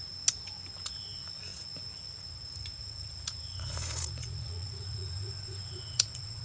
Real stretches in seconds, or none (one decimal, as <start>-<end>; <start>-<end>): 0.0-2.8